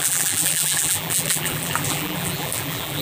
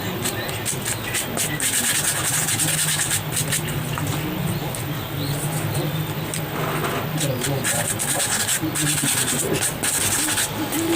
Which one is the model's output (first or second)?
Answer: first